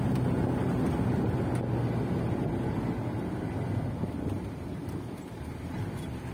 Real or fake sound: real